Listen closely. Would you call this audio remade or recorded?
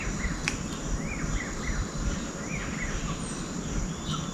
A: recorded